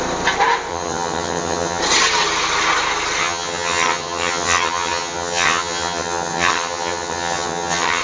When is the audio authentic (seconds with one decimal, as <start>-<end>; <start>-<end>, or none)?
0.0-0.7; 1.8-3.2

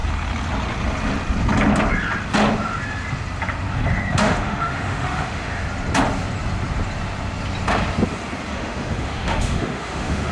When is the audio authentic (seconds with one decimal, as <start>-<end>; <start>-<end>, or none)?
0.0-4.2; 5.6-8.5

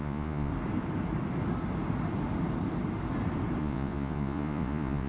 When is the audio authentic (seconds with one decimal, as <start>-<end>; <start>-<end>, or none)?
0.5-3.6

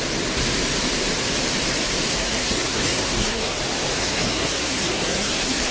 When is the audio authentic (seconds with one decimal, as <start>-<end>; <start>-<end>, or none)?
0.0-2.1; 3.6-4.0

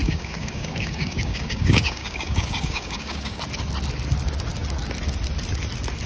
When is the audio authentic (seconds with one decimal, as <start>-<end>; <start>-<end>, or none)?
3.4-6.1

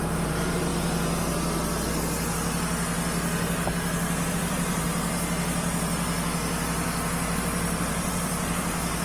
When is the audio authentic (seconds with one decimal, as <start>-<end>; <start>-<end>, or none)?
0.7-4.3; 4.9-7.4

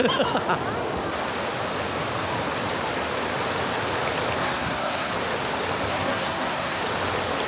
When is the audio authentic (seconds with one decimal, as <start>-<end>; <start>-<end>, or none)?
0.0-4.4; 5.1-5.9; 6.8-7.5